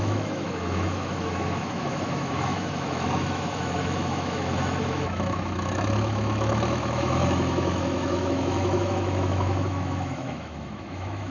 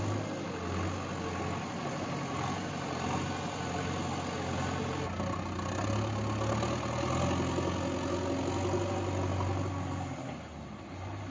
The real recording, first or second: second